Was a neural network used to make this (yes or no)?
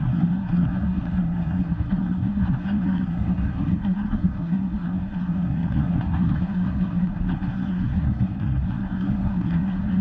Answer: yes